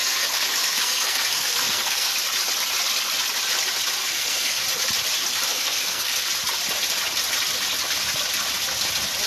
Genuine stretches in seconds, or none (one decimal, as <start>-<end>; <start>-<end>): 2.1-4.0; 4.6-5.5; 6.3-9.3